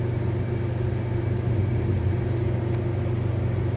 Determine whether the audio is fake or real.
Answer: real